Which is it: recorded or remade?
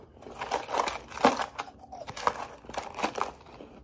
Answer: recorded